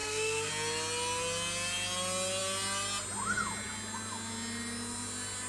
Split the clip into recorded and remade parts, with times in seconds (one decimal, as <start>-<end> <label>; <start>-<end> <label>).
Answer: 0.0-0.5 remade; 0.5-5.5 recorded

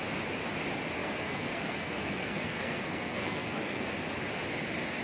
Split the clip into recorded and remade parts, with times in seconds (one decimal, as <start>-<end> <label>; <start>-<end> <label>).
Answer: 0.0-1.0 recorded; 1.0-4.0 remade; 4.0-5.0 recorded

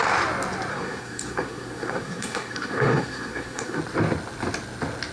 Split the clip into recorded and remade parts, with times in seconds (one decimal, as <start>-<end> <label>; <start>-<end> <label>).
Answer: 0.0-0.7 recorded; 0.7-3.8 remade; 3.8-5.1 recorded

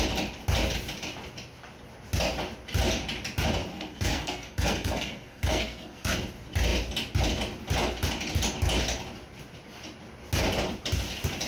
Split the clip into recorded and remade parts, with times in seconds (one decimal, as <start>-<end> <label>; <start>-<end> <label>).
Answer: 0.0-3.7 recorded; 3.7-6.2 remade; 6.2-11.5 recorded

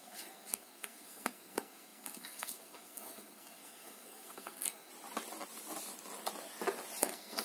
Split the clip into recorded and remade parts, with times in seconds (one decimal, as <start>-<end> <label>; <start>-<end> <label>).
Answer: 0.0-4.9 remade; 4.9-7.0 recorded; 7.0-7.4 remade